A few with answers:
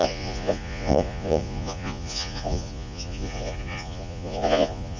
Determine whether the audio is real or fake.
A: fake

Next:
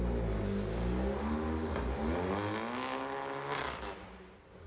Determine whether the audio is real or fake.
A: real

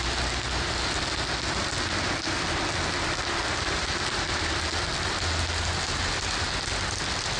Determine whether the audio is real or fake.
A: real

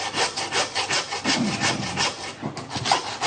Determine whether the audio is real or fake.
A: real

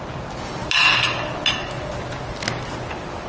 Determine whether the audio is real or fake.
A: real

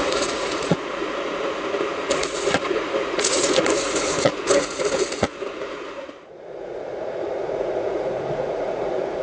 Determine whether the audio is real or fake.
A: fake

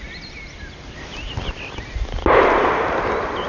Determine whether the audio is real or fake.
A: real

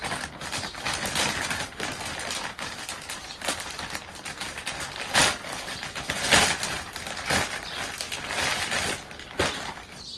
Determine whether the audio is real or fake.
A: real